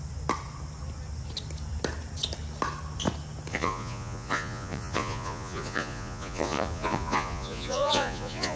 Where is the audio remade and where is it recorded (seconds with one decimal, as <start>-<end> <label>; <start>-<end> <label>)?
0.0-3.5 recorded; 3.5-8.6 remade